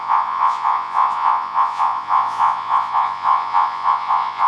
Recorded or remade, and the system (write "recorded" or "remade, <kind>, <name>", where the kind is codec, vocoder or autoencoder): remade, vocoder, Vocos